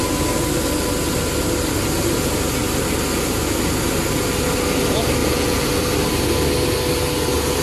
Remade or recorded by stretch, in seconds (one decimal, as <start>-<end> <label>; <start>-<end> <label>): 0.0-5.2 recorded; 5.2-5.8 remade; 5.8-7.6 recorded